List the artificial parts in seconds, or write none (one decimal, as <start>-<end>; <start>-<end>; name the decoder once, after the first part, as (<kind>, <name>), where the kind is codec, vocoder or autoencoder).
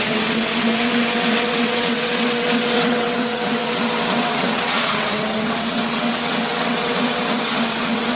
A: 0.0-8.2 (vocoder, WaveNeXt)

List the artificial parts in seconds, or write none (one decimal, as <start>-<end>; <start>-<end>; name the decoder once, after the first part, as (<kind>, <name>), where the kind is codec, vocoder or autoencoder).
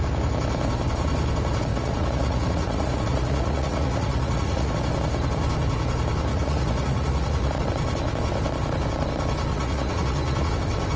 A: 1.7-4.7 (vocoder, Vocos); 6.3-7.6; 9.5-10.5